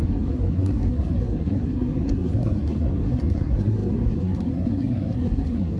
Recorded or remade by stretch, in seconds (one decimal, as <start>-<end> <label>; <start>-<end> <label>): 0.0-5.8 remade